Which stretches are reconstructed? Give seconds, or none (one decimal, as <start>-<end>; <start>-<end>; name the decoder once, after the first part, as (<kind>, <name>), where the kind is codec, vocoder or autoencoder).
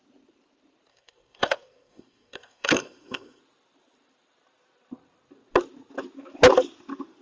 0.9-3.4 (codec, SNAC)